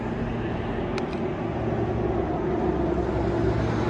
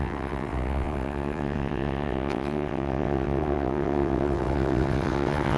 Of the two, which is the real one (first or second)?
first